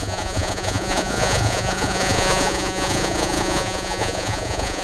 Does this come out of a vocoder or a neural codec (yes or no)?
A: yes